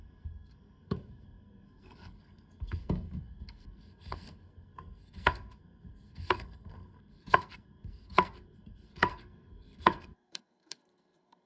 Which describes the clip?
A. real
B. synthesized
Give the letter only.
B